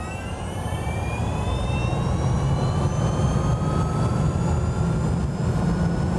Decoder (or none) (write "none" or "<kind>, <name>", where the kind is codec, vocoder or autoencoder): none